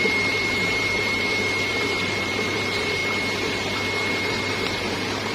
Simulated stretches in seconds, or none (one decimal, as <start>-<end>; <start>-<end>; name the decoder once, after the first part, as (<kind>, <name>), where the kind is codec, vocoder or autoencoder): 0.0-3.0 (vocoder, BigVGAN v2); 4.1-5.3